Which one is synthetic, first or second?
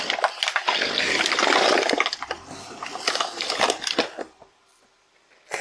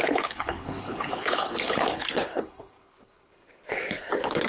second